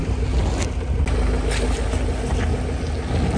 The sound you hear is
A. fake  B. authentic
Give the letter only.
B